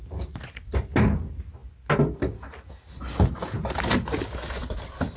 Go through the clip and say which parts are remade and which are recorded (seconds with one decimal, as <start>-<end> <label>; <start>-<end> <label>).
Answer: 0.0-5.2 recorded